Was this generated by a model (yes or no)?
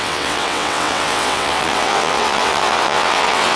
yes